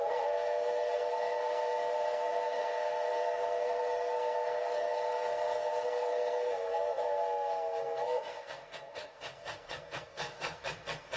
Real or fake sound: fake